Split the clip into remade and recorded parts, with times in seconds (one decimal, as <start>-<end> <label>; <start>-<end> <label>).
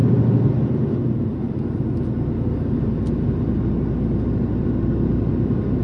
0.0-5.8 recorded